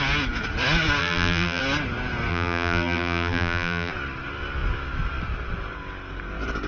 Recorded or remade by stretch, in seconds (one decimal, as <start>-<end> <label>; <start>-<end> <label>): 0.0-1.0 recorded; 1.0-1.6 remade; 1.6-2.3 recorded; 2.3-3.9 remade; 3.9-6.7 recorded